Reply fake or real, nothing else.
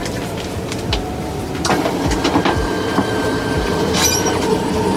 fake